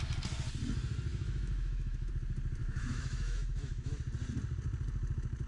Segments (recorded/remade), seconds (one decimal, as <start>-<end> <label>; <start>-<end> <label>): 0.0-1.1 recorded; 1.1-2.1 remade; 2.1-2.6 recorded; 2.6-3.9 remade; 3.9-5.5 recorded